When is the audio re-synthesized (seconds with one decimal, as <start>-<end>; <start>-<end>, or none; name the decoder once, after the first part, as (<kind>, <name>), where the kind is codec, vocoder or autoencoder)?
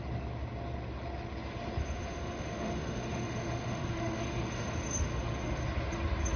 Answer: 1.8-5.6 (autoencoder, DAC-VAE)